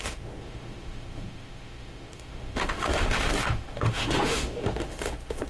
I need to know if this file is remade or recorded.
remade